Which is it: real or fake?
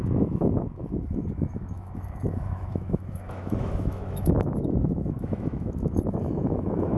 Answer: fake